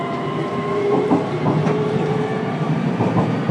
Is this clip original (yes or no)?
no